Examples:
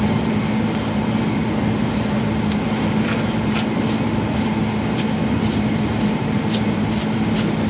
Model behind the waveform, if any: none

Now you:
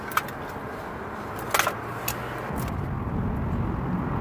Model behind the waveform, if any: none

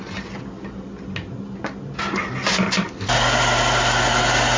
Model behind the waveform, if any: none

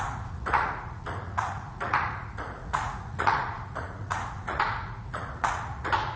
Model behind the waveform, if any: vocoder, Vocos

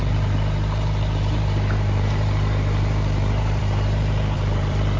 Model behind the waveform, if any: vocoder, BigVGAN v2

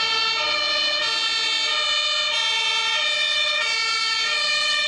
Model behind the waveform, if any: none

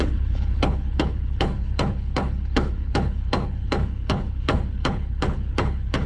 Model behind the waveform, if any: codec, HILCodec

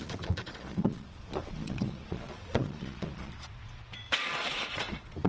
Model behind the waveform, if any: vocoder, Vocos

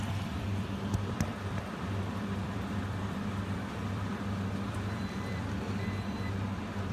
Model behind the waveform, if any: vocoder, BigVGAN v2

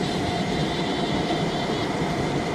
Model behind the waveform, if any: none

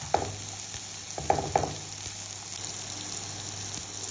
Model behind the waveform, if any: none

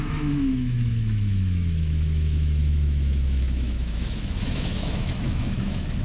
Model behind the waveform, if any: autoencoder, DAC-VAE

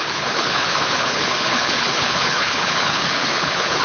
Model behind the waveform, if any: codec, HILCodec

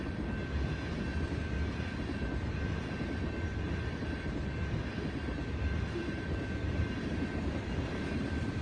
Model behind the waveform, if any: none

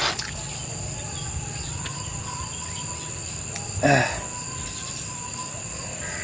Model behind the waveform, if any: none